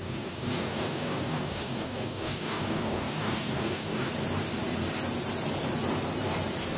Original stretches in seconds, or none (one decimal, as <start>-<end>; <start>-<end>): 4.1-6.8

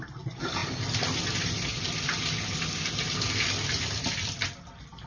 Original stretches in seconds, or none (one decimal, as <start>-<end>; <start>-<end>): 0.0-5.1

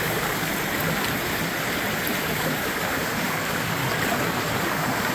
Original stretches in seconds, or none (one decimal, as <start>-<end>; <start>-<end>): 0.5-2.2; 3.8-4.6

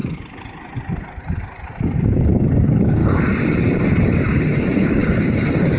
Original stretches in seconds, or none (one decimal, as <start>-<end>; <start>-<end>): 0.0-2.0; 3.0-4.0

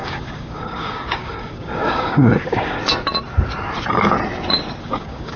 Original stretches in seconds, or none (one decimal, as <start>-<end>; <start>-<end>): 2.8-4.8